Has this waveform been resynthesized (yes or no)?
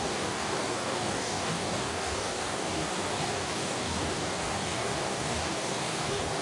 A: yes